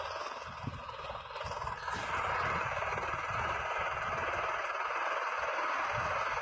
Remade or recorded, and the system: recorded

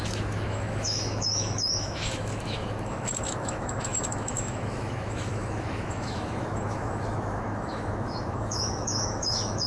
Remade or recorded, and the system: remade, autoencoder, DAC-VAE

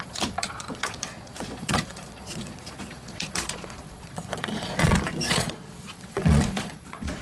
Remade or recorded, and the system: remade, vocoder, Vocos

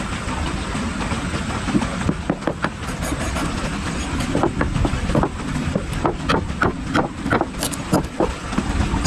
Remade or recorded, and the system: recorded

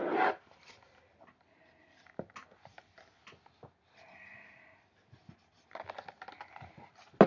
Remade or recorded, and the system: recorded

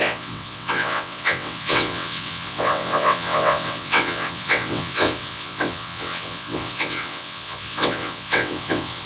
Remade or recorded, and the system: remade, vocoder, WaveNeXt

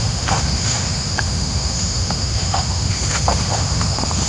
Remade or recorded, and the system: remade, autoencoder, DAC-VAE